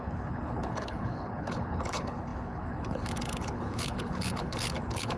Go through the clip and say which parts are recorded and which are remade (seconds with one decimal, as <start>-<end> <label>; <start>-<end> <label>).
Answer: 0.0-5.2 remade